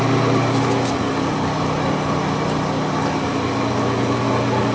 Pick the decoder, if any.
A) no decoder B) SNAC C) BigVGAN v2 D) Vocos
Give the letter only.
A